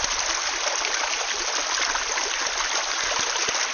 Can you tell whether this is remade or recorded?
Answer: recorded